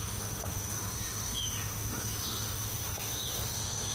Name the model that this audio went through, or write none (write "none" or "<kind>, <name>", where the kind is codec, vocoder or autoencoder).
autoencoder, DAC-VAE